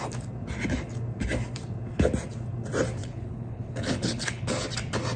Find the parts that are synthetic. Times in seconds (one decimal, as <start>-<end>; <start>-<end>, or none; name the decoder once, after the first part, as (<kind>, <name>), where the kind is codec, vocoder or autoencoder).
3.0-4.5 (codec, HILCodec)